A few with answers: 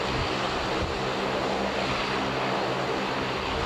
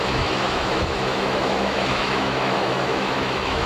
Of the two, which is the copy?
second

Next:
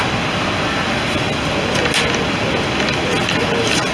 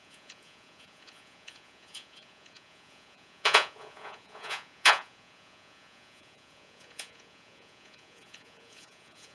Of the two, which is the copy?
second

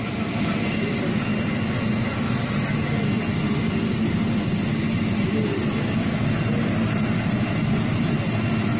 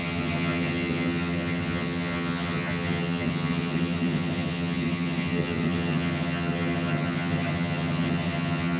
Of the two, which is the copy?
second